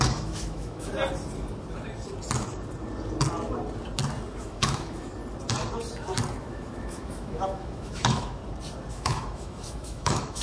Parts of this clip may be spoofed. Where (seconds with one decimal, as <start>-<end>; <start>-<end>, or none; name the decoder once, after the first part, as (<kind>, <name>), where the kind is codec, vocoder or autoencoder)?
0.0-0.9 (autoencoder, DAC-VAE); 4.4-5.2; 6.4-8.4; 8.9-10.4